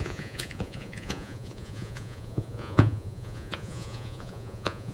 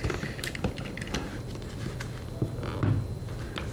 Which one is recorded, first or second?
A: second